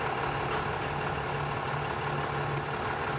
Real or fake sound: real